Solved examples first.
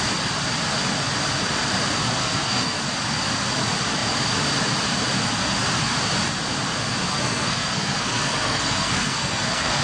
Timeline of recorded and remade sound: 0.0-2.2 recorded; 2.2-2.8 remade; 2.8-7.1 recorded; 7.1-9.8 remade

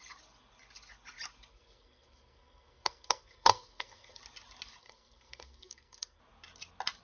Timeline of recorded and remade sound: 0.0-1.5 recorded; 1.5-4.2 remade; 4.2-4.8 recorded; 4.8-6.2 remade; 6.2-7.0 recorded

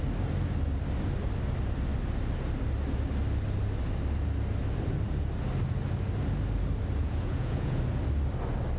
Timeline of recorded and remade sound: 0.0-7.0 recorded; 7.0-7.8 remade; 7.8-8.8 recorded

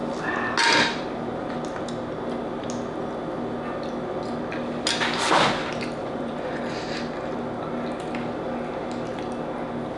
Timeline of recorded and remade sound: 0.0-6.0 recorded; 6.0-6.6 remade; 6.6-10.0 recorded

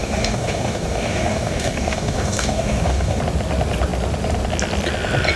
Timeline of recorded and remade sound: 0.0-3.2 remade; 3.2-5.4 recorded

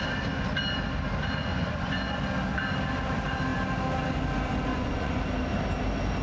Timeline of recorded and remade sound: 0.0-1.5 recorded; 1.5-2.2 remade; 2.2-4.7 recorded; 4.7-5.2 remade; 5.2-6.2 recorded

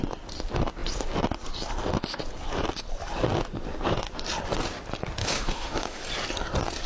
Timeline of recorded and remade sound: 0.0-5.2 recorded; 5.2-6.0 remade; 6.0-6.9 recorded